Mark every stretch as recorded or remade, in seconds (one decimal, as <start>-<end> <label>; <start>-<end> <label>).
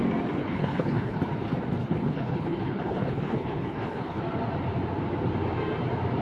0.0-0.4 recorded; 0.4-1.2 remade; 1.2-1.8 recorded; 1.8-4.2 remade; 4.2-6.2 recorded